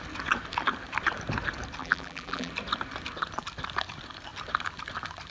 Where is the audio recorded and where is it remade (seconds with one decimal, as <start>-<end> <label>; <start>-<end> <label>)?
0.0-1.8 recorded; 1.8-2.5 remade; 2.5-5.3 recorded